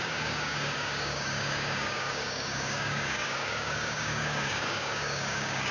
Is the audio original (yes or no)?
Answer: no